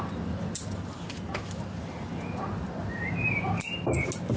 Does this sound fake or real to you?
real